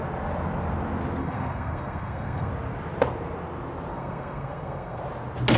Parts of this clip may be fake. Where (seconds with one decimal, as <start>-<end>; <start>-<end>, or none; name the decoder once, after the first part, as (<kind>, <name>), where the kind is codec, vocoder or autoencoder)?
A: 1.2-2.5 (codec, SNAC); 3.9-5.0